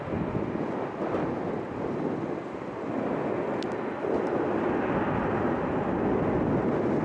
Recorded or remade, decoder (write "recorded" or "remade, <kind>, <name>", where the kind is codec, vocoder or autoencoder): recorded